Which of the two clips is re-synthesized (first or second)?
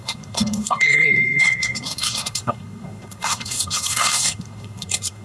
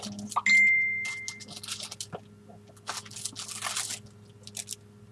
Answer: first